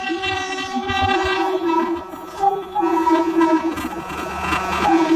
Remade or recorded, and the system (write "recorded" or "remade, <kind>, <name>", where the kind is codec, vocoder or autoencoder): remade, vocoder, Vocos